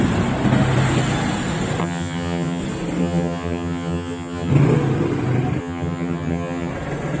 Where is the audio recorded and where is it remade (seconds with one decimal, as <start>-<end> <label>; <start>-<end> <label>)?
0.0-1.8 recorded; 1.8-2.6 remade; 2.6-3.0 recorded; 3.0-4.5 remade; 4.5-5.6 recorded; 5.6-6.7 remade; 6.7-7.2 recorded